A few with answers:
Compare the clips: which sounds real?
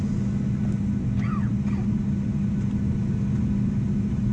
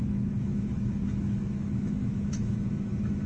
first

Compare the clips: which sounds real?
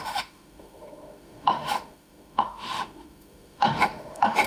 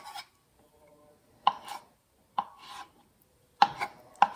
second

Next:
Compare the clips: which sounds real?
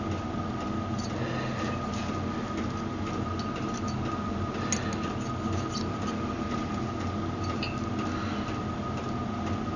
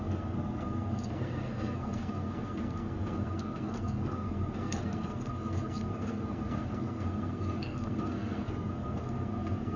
first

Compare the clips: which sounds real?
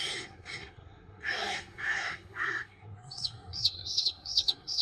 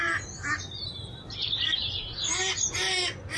second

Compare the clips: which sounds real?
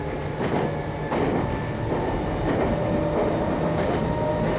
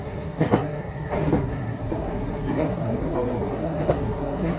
first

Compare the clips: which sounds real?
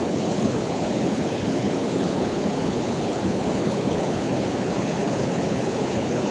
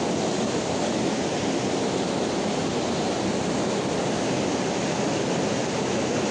second